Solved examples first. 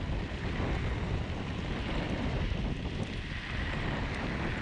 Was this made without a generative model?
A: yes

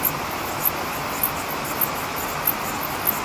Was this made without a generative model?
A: yes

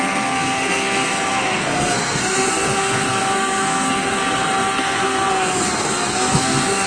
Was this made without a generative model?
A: no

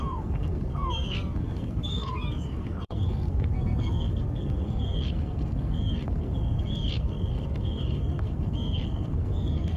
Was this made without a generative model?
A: no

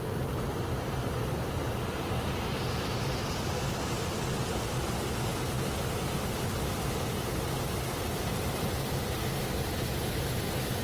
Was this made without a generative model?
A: yes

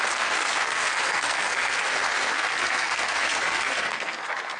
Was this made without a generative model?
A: no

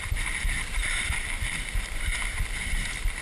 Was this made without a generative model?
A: yes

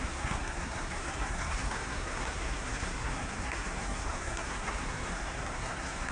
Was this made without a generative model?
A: no